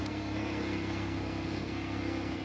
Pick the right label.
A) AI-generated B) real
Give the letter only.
A